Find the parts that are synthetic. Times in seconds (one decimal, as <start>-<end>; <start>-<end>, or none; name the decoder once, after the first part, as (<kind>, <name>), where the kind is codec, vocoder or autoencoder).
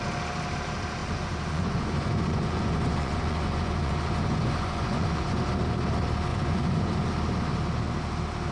1.0-5.5 (vocoder, Vocos); 6.3-7.1